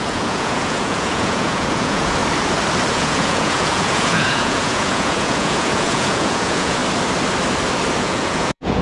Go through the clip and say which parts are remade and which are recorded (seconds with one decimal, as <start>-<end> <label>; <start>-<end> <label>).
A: 0.0-2.2 remade; 2.2-2.9 recorded; 2.9-6.8 remade; 6.8-8.0 recorded; 8.0-8.8 remade

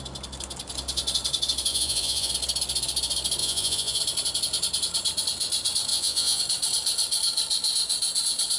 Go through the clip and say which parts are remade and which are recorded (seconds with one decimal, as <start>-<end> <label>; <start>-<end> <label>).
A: 0.0-1.7 recorded; 1.7-2.3 remade; 2.3-3.4 recorded; 3.4-4.0 remade; 4.0-5.9 recorded; 5.9-6.4 remade; 6.4-8.6 recorded

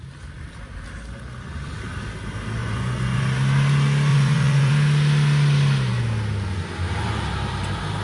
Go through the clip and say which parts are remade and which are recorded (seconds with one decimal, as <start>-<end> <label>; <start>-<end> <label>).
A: 0.0-2.6 recorded; 2.6-3.2 remade; 3.2-4.1 recorded; 4.1-4.7 remade; 4.7-8.0 recorded

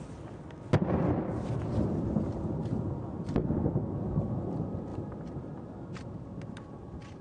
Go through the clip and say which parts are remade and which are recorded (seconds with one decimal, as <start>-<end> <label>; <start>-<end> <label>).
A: 0.0-7.2 recorded

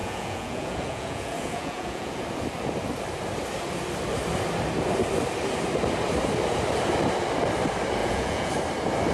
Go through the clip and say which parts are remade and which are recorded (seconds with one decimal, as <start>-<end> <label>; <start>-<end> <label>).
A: 0.0-2.2 remade; 2.2-8.0 recorded; 8.0-8.5 remade; 8.5-9.1 recorded

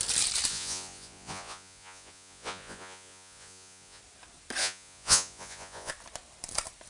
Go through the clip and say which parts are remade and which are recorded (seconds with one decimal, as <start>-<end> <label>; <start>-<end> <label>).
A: 0.0-0.5 recorded; 0.5-4.0 remade; 4.0-4.6 recorded; 4.6-5.9 remade; 5.9-6.9 recorded

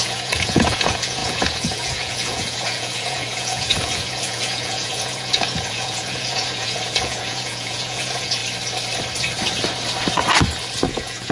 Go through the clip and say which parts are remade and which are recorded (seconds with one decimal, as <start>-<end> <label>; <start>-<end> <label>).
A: 0.0-8.4 remade; 8.4-10.9 recorded; 10.9-11.3 remade

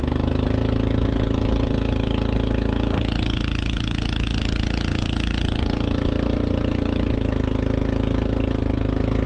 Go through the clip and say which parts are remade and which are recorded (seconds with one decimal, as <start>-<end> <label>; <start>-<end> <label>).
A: 0.0-9.3 recorded